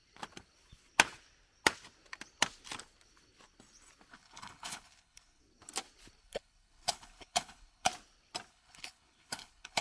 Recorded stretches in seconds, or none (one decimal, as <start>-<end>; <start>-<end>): 0.0-4.1; 5.4-6.2; 7.9-8.5